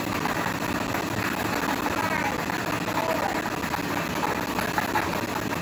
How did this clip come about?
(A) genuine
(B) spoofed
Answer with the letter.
A